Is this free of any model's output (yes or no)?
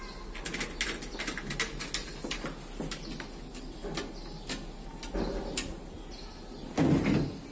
yes